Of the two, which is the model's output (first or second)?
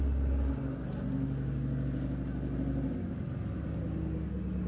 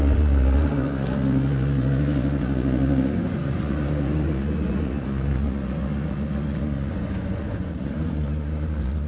second